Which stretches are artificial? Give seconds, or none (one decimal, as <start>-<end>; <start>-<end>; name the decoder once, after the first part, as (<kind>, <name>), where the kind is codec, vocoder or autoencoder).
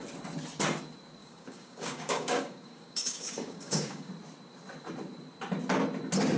1.2-4.1 (codec, DAC)